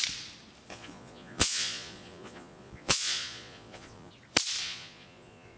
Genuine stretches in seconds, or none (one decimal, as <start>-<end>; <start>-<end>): 0.0-0.7; 4.1-4.6